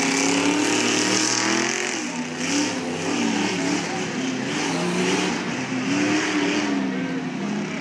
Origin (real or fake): real